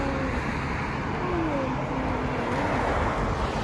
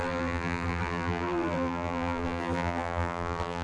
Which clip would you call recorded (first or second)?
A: first